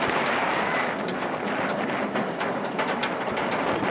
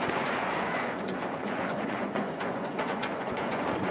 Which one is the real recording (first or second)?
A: first